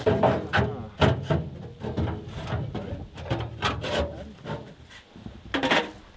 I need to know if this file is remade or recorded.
recorded